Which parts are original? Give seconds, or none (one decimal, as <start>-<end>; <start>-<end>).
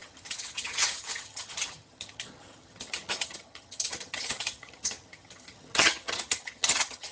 none